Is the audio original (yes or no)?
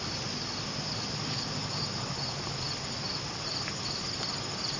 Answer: yes